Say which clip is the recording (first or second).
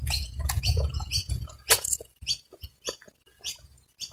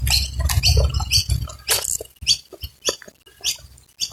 second